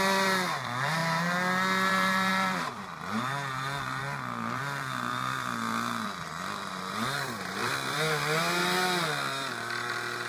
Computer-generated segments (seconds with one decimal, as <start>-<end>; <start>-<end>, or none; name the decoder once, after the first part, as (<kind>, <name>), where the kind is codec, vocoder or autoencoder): 0.0-1.0 (vocoder, BigVGAN v2); 1.9-10.3